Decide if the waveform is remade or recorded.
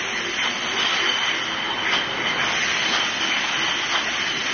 recorded